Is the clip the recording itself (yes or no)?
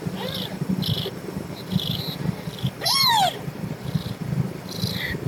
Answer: no